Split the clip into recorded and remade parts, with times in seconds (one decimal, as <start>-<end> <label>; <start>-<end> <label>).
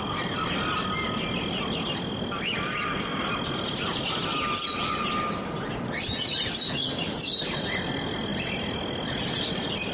0.0-9.9 recorded